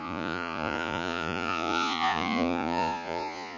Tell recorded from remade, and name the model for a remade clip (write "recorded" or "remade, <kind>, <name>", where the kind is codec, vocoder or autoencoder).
remade, vocoder, Vocos